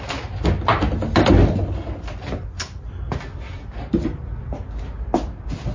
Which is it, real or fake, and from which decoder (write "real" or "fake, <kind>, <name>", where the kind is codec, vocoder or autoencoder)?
real